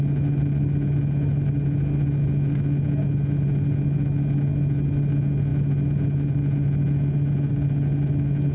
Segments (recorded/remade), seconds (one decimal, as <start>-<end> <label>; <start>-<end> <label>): 0.0-8.5 recorded